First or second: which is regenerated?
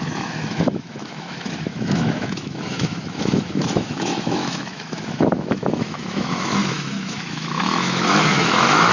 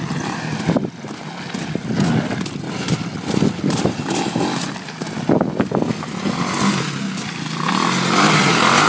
first